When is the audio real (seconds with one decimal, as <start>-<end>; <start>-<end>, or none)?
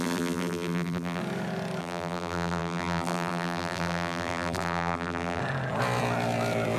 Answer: 1.2-1.8; 5.4-6.8